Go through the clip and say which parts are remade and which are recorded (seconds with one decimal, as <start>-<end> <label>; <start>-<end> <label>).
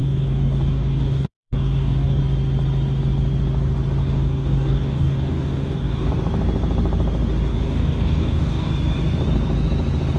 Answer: 0.0-2.2 remade; 2.2-4.0 recorded; 4.0-6.1 remade; 6.1-7.5 recorded; 7.5-8.7 remade; 8.7-10.2 recorded